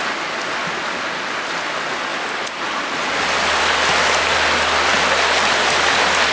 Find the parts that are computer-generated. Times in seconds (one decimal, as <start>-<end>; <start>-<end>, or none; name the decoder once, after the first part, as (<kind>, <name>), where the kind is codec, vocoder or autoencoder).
none